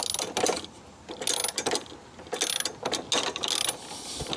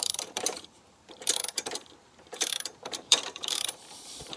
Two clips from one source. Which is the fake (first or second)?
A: second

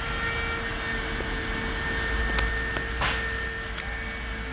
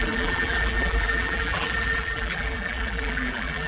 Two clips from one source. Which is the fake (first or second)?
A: second